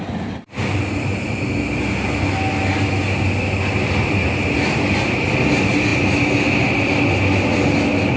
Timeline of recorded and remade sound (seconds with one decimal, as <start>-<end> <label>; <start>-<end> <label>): 0.0-8.2 recorded